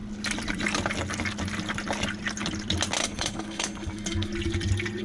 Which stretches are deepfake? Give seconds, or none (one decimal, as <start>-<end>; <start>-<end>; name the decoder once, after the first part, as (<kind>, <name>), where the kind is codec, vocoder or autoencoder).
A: 3.0-4.3 (codec, SNAC)